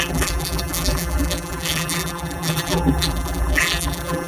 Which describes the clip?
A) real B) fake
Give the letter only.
B